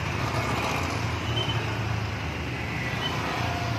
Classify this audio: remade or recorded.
recorded